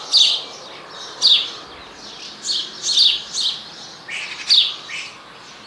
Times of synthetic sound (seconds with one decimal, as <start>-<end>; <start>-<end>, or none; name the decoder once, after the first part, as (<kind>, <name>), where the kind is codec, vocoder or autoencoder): none